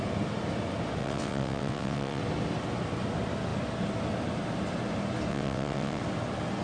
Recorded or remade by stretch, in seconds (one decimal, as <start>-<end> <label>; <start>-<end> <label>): 0.0-1.0 recorded; 1.0-2.2 remade; 2.2-5.3 recorded; 5.3-6.0 remade; 6.0-6.6 recorded

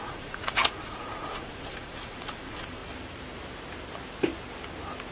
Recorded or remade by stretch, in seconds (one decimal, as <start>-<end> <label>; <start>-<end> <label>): 0.0-2.8 remade; 2.8-5.1 recorded

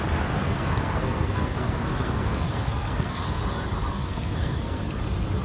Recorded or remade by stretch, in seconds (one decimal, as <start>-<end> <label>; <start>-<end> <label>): 0.0-0.4 recorded; 0.4-3.4 remade; 3.4-3.9 recorded; 3.9-5.0 remade; 5.0-5.4 recorded

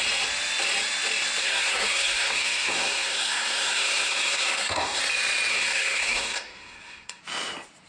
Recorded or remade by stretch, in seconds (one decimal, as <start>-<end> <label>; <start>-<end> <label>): 0.0-1.4 recorded; 1.4-5.0 remade; 5.0-5.5 recorded; 5.5-7.2 remade; 7.2-7.9 recorded